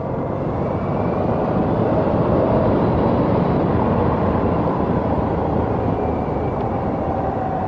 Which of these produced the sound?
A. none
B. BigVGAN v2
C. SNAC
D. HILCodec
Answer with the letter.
B